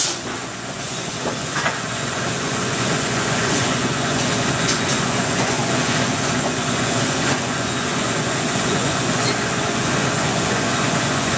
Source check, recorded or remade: remade